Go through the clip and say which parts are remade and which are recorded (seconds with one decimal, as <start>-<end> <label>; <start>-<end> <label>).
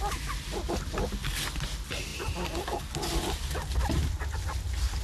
0.0-5.0 recorded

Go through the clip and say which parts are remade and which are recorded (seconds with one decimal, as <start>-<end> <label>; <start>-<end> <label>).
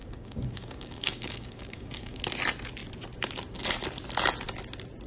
0.0-2.2 remade; 2.2-5.1 recorded